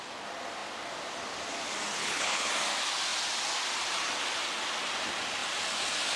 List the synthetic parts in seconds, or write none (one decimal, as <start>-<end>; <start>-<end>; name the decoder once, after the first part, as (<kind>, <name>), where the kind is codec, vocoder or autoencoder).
1.9-2.5 (codec, HILCodec)